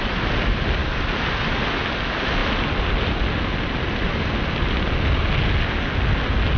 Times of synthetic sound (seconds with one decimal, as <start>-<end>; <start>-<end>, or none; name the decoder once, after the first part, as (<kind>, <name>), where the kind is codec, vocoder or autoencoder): none